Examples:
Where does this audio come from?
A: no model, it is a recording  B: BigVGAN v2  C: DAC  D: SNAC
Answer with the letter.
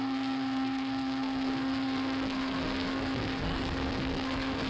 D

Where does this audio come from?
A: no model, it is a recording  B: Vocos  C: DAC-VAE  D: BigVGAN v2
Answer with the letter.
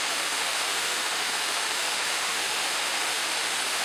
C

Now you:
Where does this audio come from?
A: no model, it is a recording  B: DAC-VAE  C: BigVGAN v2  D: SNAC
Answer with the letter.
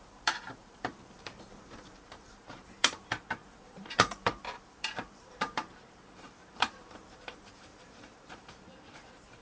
C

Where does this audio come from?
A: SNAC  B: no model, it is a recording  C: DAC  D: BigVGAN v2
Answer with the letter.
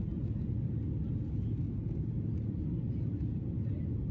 B